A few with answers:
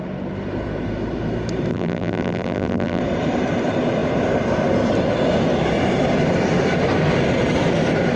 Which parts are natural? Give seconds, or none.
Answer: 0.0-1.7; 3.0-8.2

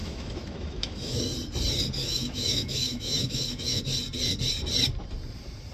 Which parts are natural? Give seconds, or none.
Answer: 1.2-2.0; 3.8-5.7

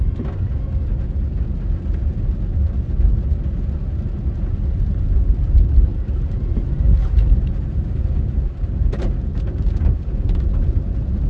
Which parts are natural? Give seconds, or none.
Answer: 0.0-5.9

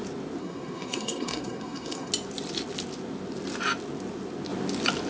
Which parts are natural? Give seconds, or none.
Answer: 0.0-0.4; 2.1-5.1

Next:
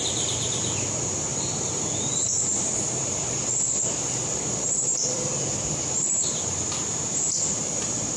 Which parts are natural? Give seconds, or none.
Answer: none

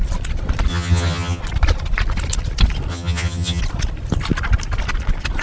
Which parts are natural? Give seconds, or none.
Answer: 0.0-0.7; 1.4-2.9; 3.6-5.4

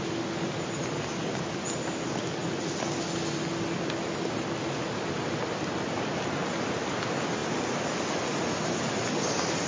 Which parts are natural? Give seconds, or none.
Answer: 0.0-9.7